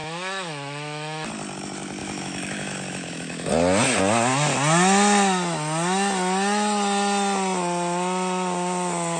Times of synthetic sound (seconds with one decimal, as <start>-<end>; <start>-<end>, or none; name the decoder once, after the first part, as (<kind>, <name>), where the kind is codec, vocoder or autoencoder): 0.0-1.3 (autoencoder, DAC-VAE); 2.0-3.5